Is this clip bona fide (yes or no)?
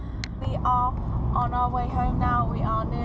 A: yes